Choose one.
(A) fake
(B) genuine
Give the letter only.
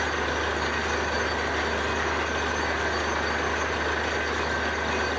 B